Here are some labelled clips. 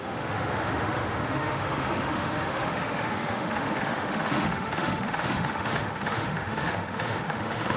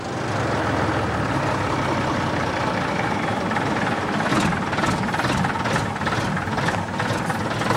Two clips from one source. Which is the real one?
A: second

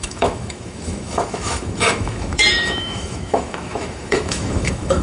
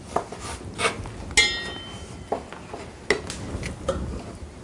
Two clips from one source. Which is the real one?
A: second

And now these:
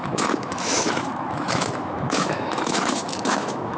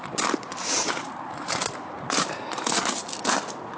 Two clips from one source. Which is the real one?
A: second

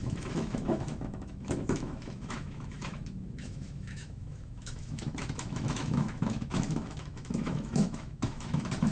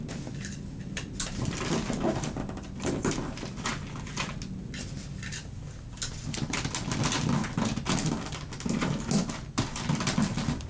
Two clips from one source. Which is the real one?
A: second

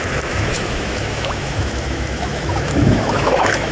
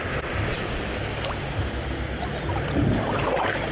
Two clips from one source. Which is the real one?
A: second